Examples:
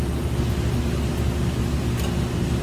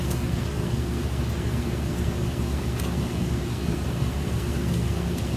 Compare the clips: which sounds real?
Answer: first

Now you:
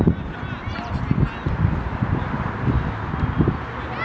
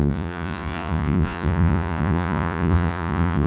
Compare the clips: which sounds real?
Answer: first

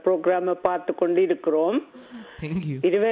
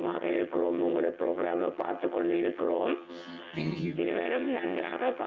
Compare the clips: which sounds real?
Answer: first